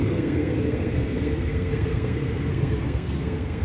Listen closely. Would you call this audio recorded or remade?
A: remade